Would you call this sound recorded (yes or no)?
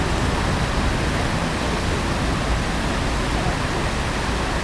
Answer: yes